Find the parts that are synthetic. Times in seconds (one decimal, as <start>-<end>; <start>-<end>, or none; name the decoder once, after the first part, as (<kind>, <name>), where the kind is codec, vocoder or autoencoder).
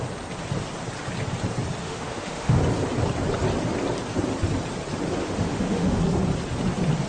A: 1.8-2.6 (autoencoder, DAC-VAE); 5.2-6.0